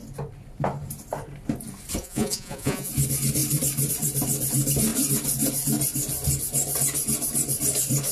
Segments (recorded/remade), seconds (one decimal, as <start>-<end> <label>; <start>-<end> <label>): 0.0-2.0 recorded; 2.0-2.9 remade; 2.9-8.1 recorded